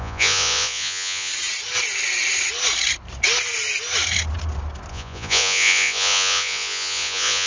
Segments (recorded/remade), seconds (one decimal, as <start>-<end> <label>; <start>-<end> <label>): 0.0-1.3 remade; 1.3-4.9 recorded; 4.9-7.5 remade